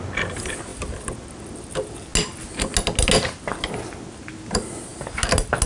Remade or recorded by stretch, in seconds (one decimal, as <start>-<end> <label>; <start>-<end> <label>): 0.0-5.7 recorded